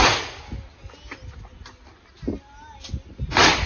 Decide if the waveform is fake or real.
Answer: real